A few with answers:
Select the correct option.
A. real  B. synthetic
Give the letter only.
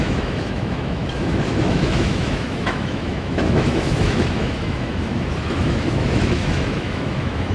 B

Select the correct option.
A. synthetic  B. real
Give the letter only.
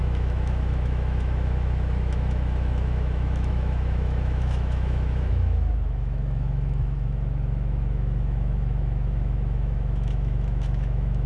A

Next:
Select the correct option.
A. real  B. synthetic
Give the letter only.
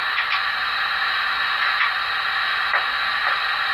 A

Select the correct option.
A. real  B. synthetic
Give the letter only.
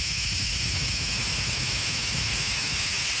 B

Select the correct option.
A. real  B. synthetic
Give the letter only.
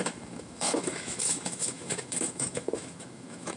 B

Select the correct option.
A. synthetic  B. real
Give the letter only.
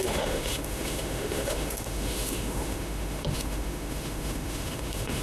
A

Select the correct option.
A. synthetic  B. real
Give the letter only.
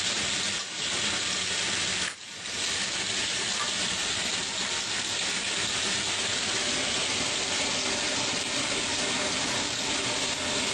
B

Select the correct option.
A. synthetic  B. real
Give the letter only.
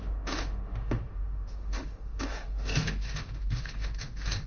A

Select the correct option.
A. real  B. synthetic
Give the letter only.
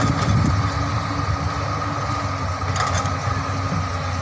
A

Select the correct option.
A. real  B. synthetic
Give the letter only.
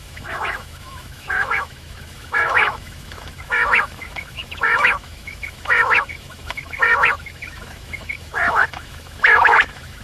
B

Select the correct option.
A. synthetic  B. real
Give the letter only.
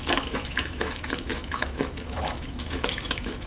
A